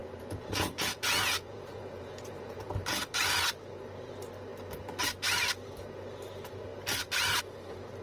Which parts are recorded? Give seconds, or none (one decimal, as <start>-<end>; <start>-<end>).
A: 2.7-8.0

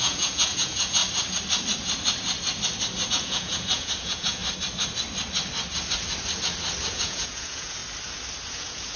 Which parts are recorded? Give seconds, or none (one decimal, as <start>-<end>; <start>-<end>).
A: 1.0-3.1; 4.4-6.9; 7.8-8.5

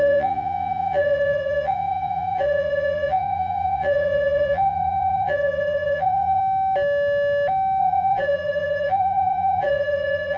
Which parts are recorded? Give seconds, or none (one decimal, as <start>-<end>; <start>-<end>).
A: 6.4-7.8